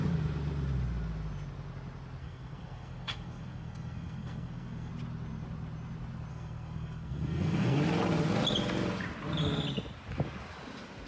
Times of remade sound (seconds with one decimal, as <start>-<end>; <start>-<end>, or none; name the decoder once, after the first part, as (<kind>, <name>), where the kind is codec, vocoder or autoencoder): 2.2-4.9 (codec, SNAC); 6.3-7.8